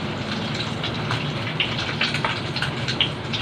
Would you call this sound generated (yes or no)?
yes